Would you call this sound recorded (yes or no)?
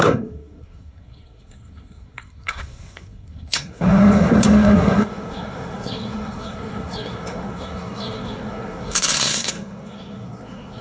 no